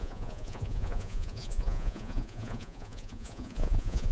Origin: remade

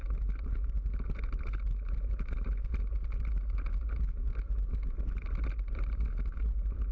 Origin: recorded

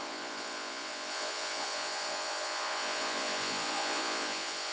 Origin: remade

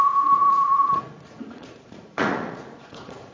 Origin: remade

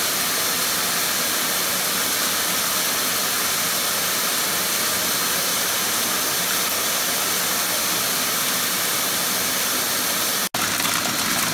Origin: recorded